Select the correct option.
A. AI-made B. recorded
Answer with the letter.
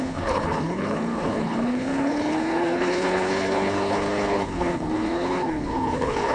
A